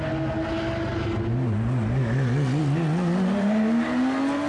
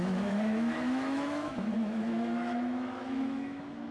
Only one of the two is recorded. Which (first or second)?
first